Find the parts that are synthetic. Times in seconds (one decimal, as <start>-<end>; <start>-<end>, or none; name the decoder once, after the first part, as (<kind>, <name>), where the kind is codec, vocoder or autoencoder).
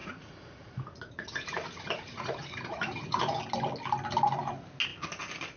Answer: 0.0-3.4 (vocoder, Vocos)